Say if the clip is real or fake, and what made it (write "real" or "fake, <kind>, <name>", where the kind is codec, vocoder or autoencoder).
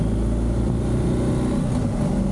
real